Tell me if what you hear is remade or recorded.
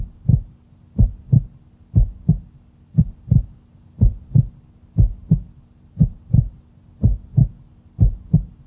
recorded